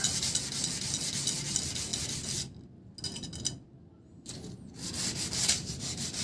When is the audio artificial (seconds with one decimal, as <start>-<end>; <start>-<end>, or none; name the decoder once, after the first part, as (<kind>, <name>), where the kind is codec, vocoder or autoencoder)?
none

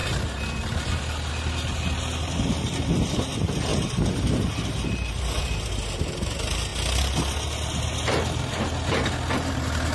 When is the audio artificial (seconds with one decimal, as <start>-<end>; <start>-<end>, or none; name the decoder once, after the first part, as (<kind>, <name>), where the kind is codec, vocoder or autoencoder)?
3.7-5.4 (vocoder, BigVGAN v2)

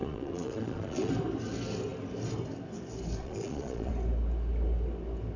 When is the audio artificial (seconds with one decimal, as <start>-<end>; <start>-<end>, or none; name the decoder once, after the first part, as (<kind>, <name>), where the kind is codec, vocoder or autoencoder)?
0.0-1.1 (vocoder, Vocos); 3.2-3.9

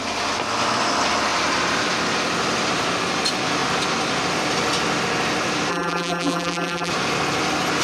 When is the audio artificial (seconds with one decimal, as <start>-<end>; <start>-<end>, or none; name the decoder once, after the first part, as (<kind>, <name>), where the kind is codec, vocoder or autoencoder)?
5.7-6.9 (vocoder, BigVGAN v2)

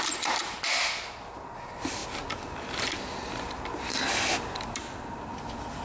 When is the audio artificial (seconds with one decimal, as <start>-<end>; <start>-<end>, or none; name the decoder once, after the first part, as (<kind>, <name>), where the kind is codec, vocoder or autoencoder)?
none

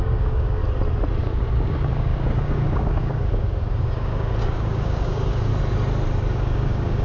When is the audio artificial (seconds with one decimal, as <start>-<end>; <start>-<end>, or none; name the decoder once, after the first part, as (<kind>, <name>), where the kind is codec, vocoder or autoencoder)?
0.0-0.6 (codec, DAC); 1.2-5.5; 6.3-7.0

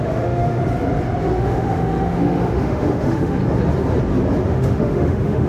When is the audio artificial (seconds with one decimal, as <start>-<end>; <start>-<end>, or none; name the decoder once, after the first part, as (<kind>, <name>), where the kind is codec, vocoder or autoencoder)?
0.0-0.6 (autoencoder, DAC-VAE); 1.2-3.4; 4.5-5.5